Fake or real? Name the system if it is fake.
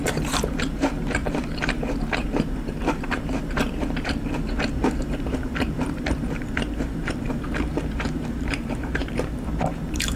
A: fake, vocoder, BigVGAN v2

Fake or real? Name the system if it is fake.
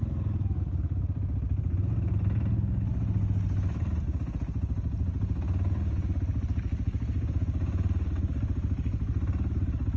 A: real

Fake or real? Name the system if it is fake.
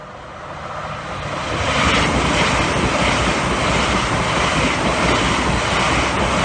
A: real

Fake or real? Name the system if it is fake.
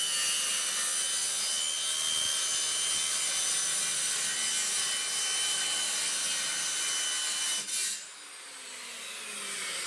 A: real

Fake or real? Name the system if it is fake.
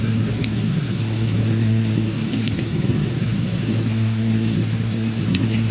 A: fake, codec, SNAC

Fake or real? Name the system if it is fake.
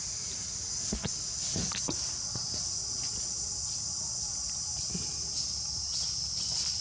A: real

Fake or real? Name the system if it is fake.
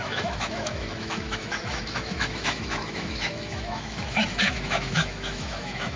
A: fake, autoencoder, DAC-VAE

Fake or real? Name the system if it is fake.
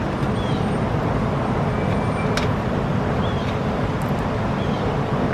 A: real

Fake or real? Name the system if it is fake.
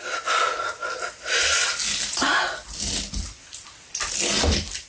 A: real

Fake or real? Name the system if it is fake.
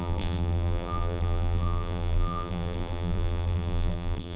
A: fake, vocoder, BigVGAN v2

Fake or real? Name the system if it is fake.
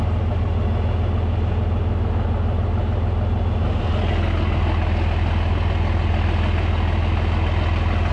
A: real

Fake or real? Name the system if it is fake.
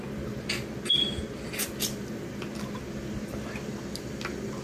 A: real